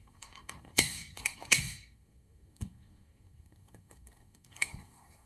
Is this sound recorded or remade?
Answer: remade